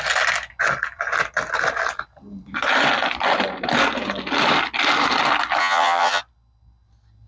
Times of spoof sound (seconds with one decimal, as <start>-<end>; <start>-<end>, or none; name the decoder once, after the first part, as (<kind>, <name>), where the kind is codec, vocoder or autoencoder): 5.6-6.2 (vocoder, HiFi-GAN)